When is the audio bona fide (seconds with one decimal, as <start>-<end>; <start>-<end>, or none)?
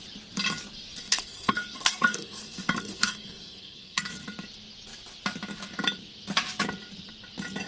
0.0-1.0; 4.1-7.7